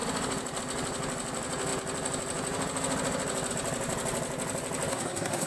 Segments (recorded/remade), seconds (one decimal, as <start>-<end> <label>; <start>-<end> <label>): 0.0-4.9 recorded; 4.9-5.5 remade